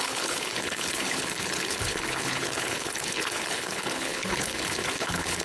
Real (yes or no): no